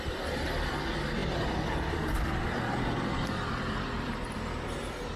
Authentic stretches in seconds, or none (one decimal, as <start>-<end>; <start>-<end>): 0.0-5.2